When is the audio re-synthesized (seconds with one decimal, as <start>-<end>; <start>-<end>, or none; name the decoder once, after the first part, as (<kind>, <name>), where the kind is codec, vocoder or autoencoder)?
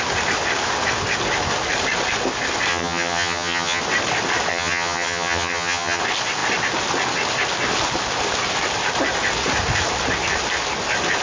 2.7-3.8 (vocoder, HiFi-GAN); 4.5-6.0